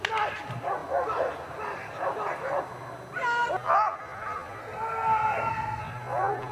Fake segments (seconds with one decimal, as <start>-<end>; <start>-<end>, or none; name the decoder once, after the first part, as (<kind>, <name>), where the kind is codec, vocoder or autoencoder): 4.6-5.8 (codec, SNAC)